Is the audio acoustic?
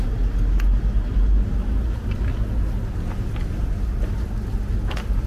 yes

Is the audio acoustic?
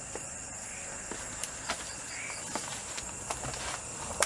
yes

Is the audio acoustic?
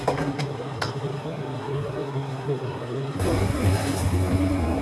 no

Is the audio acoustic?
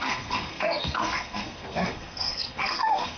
no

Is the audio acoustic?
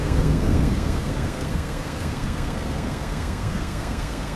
no